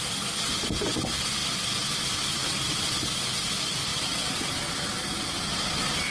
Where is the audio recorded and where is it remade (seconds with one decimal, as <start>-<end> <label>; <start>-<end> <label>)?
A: 0.0-6.1 recorded